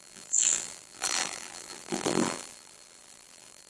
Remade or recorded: remade